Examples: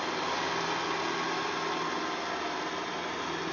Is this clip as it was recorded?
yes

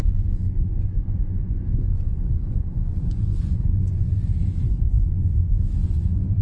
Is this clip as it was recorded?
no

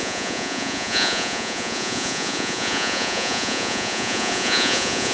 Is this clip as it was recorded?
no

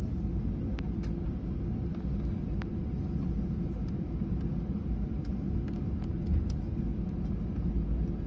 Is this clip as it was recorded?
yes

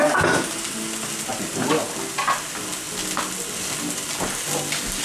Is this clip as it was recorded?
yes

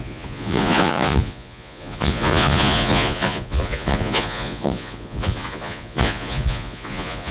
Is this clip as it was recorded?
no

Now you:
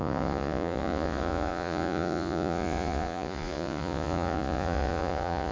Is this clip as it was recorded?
no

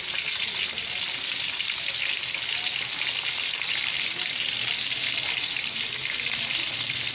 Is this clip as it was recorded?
yes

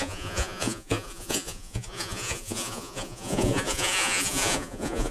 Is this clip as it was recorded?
no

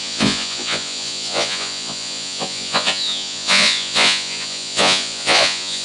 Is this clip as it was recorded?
no